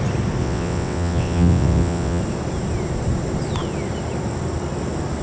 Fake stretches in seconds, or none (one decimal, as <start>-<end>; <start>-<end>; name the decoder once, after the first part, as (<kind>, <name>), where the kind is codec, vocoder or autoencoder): 0.4-2.2 (vocoder, WaveNeXt)

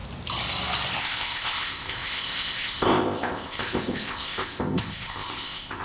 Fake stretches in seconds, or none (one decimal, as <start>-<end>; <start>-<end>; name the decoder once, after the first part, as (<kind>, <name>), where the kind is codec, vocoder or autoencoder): 1.0-5.8 (codec, ZipCodec)

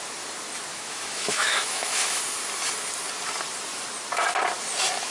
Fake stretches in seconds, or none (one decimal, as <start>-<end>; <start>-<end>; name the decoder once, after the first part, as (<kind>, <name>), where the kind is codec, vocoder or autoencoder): 0.7-2.2 (autoencoder, DAC-VAE)